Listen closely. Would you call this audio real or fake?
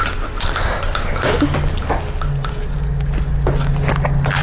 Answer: real